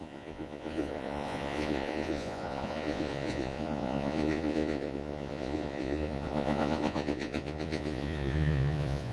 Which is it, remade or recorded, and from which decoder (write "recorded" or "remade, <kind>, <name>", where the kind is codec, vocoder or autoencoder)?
remade, vocoder, Vocos